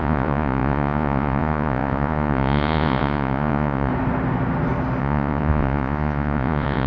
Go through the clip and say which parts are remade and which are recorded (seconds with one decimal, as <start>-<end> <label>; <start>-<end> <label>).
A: 0.0-3.9 remade; 3.9-5.0 recorded; 5.0-6.9 remade